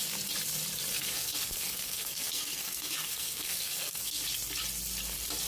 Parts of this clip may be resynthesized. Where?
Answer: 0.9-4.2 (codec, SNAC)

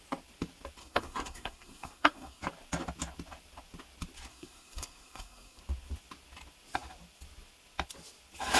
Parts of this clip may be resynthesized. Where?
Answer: 0.8-2.4 (codec, SNAC); 4.3-5.6

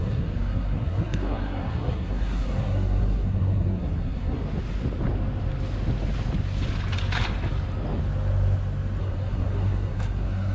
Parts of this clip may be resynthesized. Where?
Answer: 0.0-4.4 (codec, SNAC); 9.0-10.5

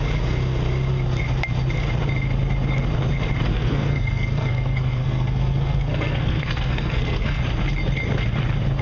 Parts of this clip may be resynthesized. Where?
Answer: 3.5-7.4 (codec, SNAC)